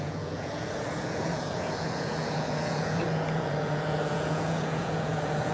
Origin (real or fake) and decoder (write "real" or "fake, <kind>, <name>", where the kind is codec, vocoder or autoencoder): fake, vocoder, Vocos